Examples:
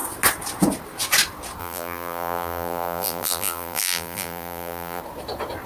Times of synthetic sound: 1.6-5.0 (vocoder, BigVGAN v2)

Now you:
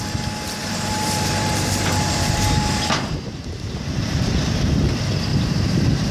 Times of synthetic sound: 0.6-4.3 (vocoder, BigVGAN v2); 5.3-6.1

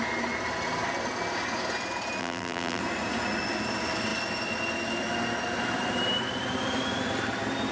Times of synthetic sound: 2.2-2.8 (vocoder, BigVGAN v2)

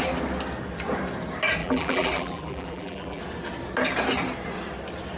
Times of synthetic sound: 1.6-3.2 (vocoder, BigVGAN v2)

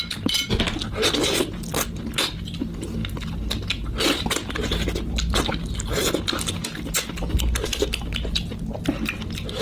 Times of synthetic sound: none